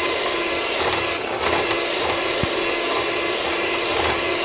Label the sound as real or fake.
real